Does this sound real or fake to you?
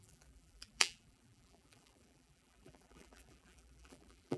fake